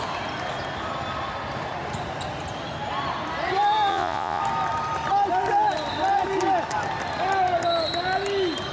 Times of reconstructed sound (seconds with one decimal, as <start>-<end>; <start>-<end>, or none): 3.9-4.4